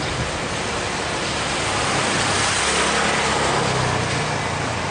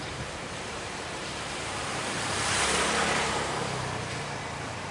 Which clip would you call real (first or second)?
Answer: first